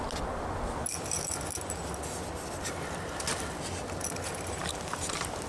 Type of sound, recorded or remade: recorded